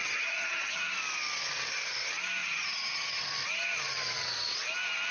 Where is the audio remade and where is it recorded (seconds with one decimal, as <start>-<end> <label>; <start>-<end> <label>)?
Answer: 0.0-0.9 remade; 0.9-2.4 recorded; 2.4-3.2 remade; 3.2-5.1 recorded